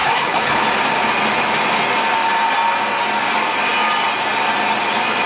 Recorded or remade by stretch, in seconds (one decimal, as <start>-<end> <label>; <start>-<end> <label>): 0.0-0.6 remade; 0.6-5.3 recorded